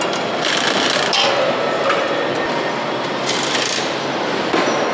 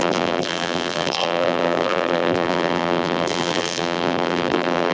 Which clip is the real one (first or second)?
first